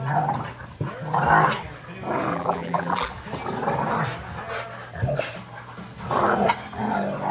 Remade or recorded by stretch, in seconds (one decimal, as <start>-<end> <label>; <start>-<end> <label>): 0.0-2.3 recorded; 2.3-3.1 remade; 3.1-7.3 recorded